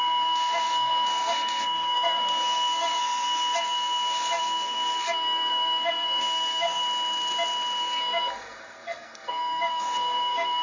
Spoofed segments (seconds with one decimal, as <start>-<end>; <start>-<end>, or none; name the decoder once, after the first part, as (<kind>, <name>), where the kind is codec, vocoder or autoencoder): 0.0-6.8 (codec, SNAC); 7.8-10.6